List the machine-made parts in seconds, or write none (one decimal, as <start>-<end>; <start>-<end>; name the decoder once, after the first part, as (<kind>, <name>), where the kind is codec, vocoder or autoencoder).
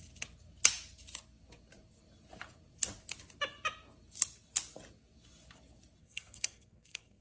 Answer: 6.0-7.2 (codec, SNAC)